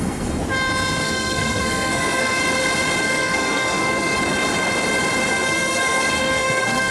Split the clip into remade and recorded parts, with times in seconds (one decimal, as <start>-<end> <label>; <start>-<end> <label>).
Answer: 0.0-0.4 remade; 0.4-1.0 recorded; 1.0-2.4 remade; 2.4-3.0 recorded; 3.0-4.2 remade; 4.2-5.3 recorded; 5.3-6.9 remade